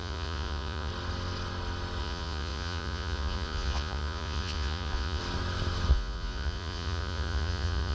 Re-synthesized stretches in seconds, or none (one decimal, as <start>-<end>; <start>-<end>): 0.0-0.9; 2.0-5.2; 5.9-7.9